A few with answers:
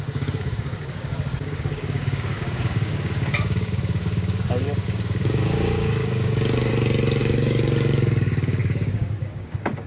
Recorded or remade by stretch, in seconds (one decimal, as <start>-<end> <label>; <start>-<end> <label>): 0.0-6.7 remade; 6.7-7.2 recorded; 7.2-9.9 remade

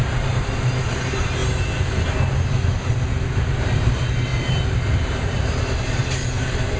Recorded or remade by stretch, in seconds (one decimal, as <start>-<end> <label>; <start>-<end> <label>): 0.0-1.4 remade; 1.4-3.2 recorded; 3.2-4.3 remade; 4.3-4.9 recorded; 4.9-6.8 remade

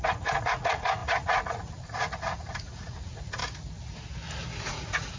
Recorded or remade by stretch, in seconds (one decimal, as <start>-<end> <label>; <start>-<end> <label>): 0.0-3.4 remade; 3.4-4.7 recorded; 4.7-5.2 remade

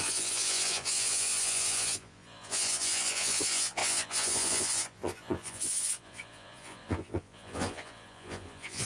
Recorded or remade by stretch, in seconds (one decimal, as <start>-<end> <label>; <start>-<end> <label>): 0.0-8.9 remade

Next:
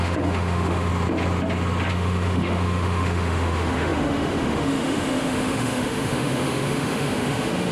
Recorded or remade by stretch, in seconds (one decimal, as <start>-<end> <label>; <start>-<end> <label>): 0.0-0.9 remade; 0.9-1.9 recorded; 1.9-7.7 remade